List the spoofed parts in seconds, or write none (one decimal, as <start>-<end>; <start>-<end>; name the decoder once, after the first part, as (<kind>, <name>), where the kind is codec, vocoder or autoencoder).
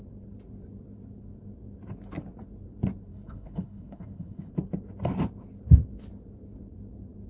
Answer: 3.1-4.5 (codec, HILCodec)